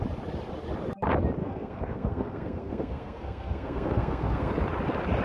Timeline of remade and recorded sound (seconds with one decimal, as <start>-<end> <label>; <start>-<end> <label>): 0.0-1.4 recorded; 1.4-4.5 remade; 4.5-5.2 recorded

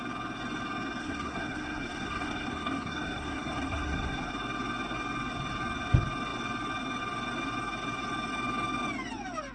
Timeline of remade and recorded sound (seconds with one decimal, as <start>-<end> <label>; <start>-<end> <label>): 0.0-1.0 recorded; 1.0-4.3 remade; 4.3-9.5 recorded

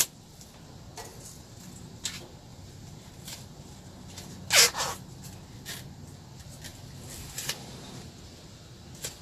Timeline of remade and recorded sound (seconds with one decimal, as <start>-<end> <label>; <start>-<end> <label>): 0.0-2.5 recorded; 2.5-3.8 remade; 3.8-9.2 recorded

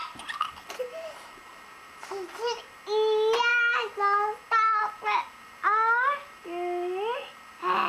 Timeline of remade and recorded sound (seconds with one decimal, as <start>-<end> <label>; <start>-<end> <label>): 0.0-7.9 recorded

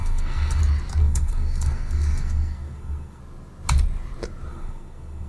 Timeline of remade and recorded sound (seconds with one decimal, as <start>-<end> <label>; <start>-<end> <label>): 0.0-0.6 remade; 0.6-1.0 recorded; 1.0-3.2 remade; 3.2-4.5 recorded; 4.5-5.3 remade

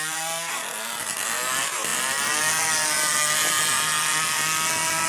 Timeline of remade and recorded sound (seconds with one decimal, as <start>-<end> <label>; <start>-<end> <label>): 0.0-5.1 recorded